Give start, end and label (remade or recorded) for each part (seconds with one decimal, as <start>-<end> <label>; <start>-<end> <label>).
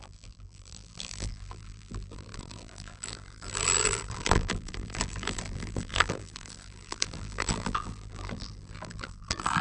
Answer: 0.0-9.6 remade